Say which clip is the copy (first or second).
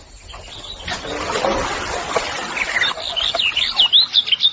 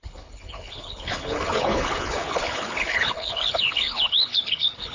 second